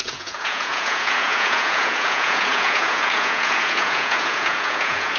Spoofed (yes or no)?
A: yes